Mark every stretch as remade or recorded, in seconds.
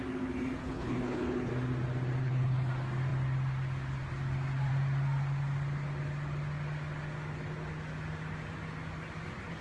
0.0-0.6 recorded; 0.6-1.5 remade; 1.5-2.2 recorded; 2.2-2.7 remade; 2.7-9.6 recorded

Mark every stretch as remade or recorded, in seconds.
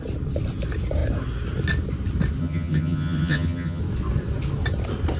0.0-2.4 recorded; 2.4-3.8 remade; 3.8-5.2 recorded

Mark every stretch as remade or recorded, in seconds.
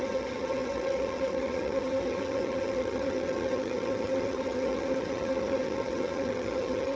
0.0-7.0 remade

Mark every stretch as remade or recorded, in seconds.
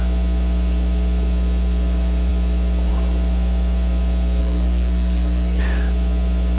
0.0-4.4 recorded; 4.4-5.6 remade; 5.6-6.6 recorded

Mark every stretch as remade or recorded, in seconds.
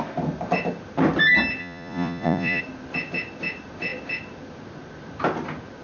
0.0-1.6 recorded; 1.6-2.6 remade; 2.6-5.8 recorded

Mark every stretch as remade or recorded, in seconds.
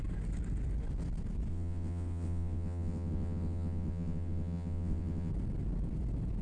0.0-1.5 recorded; 1.5-5.3 remade; 5.3-6.4 recorded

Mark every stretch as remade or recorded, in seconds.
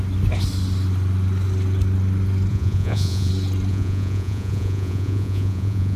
0.0-2.5 recorded; 2.5-3.3 remade; 3.3-3.7 recorded; 3.7-6.0 remade